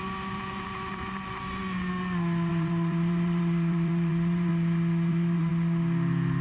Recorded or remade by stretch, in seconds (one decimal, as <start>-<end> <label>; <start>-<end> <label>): 0.0-1.6 remade; 1.6-2.5 recorded; 2.5-4.5 remade; 4.5-5.1 recorded; 5.1-5.5 remade; 5.5-6.4 recorded